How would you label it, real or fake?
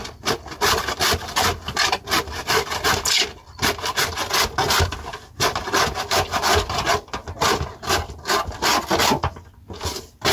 real